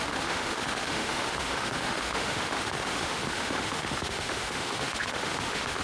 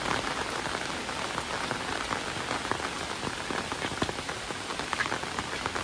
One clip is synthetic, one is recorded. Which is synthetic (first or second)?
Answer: first